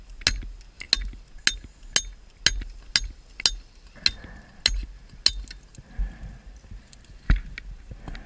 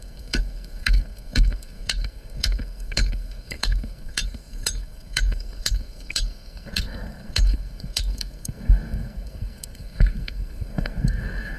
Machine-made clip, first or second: second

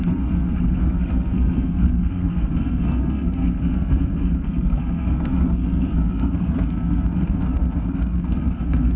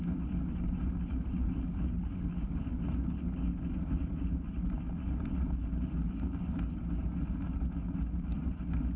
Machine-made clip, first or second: first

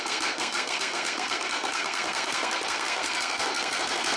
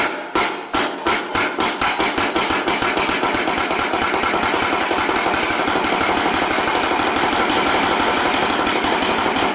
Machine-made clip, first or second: first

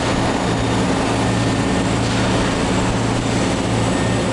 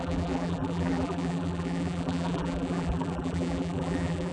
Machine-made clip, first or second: second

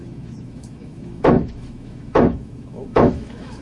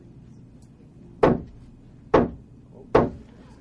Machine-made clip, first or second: first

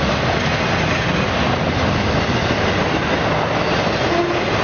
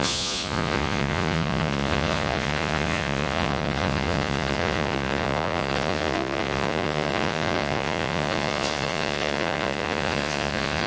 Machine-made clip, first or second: second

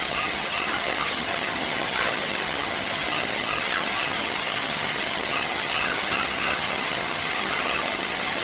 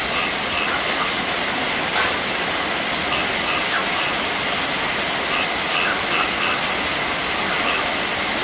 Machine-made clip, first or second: first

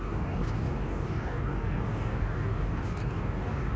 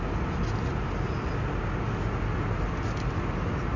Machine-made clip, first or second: first